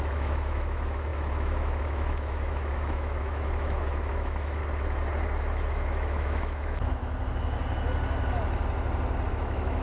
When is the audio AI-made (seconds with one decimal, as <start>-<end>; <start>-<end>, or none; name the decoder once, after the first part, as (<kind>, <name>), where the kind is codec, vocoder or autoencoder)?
0.0-4.6 (autoencoder, DAC-VAE); 5.7-7.0; 9.3-9.8